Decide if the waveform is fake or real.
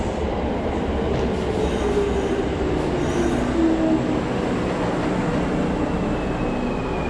real